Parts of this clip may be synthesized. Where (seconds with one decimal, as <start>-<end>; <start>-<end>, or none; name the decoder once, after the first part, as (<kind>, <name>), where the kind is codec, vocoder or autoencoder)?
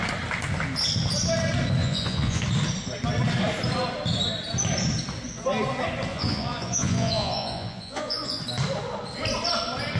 1.8-2.4 (vocoder, Vocos); 6.1-8.4